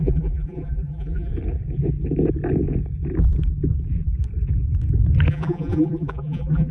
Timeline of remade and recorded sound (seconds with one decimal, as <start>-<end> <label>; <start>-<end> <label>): 0.0-1.3 remade; 1.3-5.3 recorded; 5.3-6.7 remade